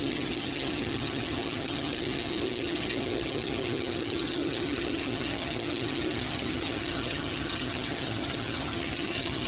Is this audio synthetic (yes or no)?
yes